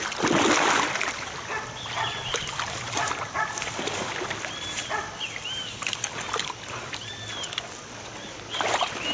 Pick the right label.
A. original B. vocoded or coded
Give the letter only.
B